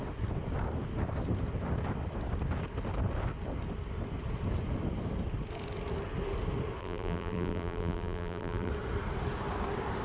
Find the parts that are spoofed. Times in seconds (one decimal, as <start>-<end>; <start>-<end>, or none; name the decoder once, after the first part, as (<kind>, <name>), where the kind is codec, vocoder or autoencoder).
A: 6.8-8.7 (vocoder, BigVGAN v2)